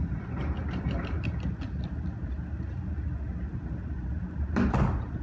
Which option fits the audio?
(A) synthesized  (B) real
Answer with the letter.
B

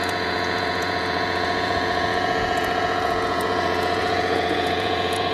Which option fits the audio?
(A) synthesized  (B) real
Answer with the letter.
A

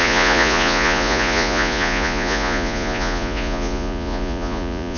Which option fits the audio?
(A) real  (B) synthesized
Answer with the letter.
B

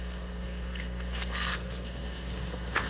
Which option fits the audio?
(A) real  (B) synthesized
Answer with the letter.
B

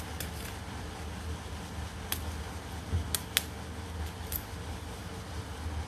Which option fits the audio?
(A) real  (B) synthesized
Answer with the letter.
A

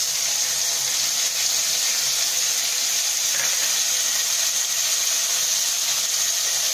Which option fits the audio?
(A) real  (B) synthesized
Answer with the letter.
A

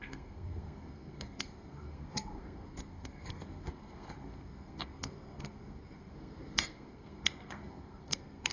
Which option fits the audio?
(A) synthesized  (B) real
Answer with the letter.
A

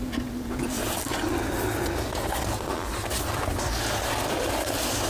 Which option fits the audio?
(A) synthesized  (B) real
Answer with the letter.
B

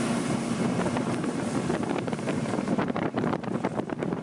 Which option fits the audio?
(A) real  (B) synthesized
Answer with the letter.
B